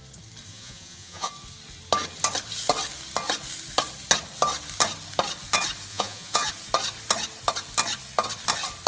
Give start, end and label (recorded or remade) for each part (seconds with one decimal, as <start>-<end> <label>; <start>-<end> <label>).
0.0-0.5 recorded; 0.5-1.3 remade; 1.3-5.9 recorded; 5.9-6.5 remade; 6.5-8.9 recorded